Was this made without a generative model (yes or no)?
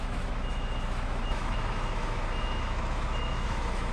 no